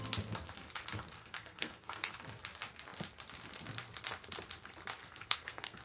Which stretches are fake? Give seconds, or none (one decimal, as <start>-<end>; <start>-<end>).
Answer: 1.2-2.1; 5.0-5.8

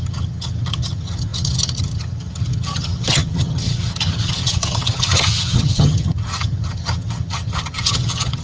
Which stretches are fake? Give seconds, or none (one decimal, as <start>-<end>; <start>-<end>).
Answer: 0.0-8.4

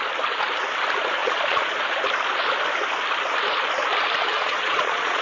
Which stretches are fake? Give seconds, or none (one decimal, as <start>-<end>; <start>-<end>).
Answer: 1.2-1.7; 4.3-5.2

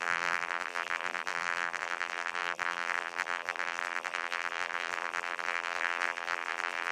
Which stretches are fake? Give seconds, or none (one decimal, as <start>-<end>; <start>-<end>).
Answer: 0.0-6.9

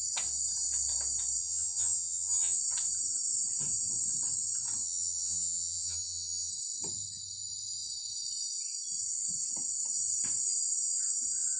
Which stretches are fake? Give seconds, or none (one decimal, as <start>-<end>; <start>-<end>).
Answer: 1.4-2.6; 4.8-6.5

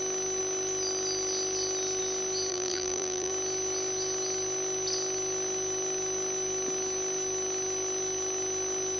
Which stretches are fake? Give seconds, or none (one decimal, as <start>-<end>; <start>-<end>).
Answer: 2.5-3.3